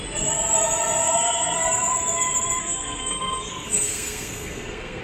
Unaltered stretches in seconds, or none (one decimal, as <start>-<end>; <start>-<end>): 0.0-1.0; 1.6-2.6

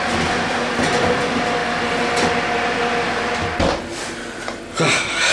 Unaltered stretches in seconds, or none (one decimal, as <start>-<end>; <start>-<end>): 0.0-5.3

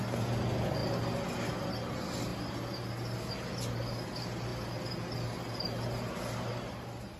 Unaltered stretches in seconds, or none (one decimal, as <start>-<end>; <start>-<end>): 0.0-7.2

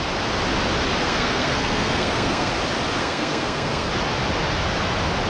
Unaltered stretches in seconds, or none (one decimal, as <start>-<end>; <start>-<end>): 0.0-1.0; 2.5-3.0; 3.9-5.3

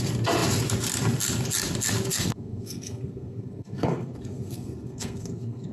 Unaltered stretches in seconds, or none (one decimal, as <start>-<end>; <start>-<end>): 0.0-2.1

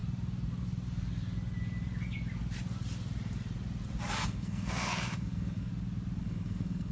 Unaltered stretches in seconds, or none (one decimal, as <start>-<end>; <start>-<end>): 0.0-4.1; 5.7-6.2

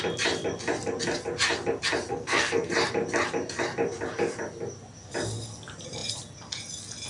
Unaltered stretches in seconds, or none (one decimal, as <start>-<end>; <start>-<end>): 0.0-2.1; 2.7-7.1

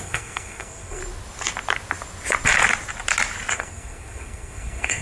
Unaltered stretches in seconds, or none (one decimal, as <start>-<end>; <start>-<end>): 1.0-3.5